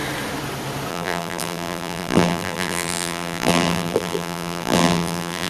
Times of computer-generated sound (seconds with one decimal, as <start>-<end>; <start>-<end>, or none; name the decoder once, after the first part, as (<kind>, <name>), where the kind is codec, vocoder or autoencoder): 0.9-5.5 (vocoder, BigVGAN v2)